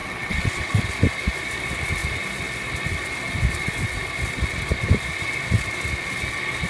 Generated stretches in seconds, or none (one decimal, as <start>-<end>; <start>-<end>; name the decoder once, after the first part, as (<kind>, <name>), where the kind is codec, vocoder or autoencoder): 0.0-0.8 (vocoder, WaveNeXt)